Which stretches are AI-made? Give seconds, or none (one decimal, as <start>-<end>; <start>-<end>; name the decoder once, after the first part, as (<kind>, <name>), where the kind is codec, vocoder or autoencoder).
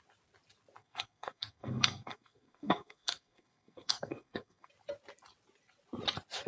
0.8-4.7 (codec, SNAC)